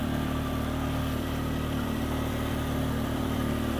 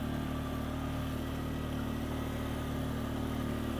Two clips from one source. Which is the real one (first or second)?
second